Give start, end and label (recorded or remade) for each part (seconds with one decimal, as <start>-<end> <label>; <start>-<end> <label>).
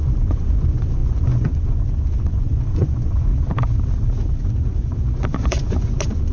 0.0-3.3 remade; 3.3-3.9 recorded; 3.9-6.3 remade